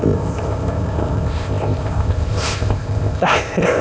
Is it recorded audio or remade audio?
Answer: remade